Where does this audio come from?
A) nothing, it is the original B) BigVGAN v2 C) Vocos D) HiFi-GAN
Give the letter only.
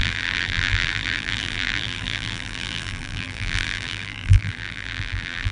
B